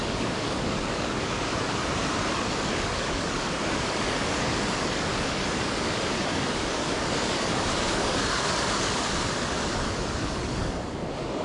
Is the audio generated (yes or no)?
yes